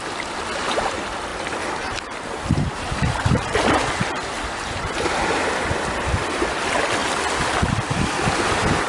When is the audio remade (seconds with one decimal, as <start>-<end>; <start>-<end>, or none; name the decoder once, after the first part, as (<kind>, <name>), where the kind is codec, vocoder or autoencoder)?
1.3-5.1 (vocoder, BigVGAN v2)